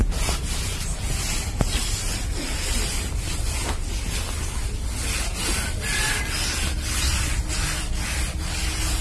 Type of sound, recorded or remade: recorded